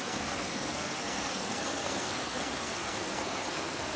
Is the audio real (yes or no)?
no